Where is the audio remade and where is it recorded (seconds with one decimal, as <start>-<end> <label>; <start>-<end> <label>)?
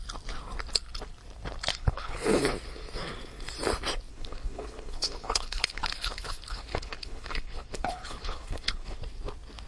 0.0-1.7 recorded; 1.7-2.4 remade; 2.4-4.1 recorded; 4.1-9.0 remade; 9.0-9.7 recorded